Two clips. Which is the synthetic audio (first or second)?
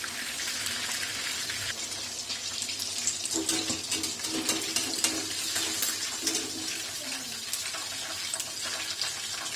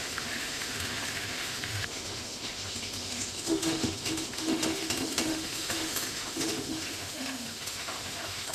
second